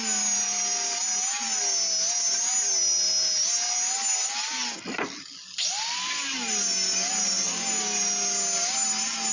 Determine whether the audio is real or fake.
real